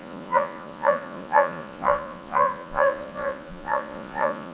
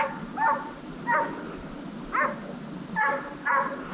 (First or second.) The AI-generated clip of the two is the first